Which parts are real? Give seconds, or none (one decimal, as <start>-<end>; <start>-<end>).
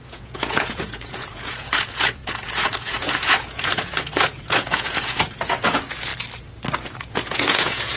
6.1-6.8